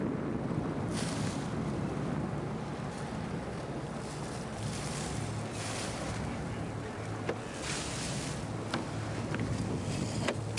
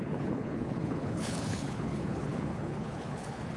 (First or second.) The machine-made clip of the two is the second